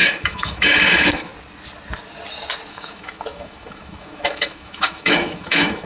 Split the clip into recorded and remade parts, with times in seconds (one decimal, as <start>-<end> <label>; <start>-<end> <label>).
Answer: 0.0-1.3 remade; 1.3-2.7 recorded; 2.7-5.9 remade